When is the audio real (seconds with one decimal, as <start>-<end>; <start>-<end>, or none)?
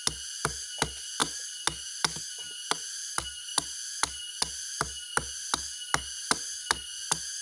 0.0-7.4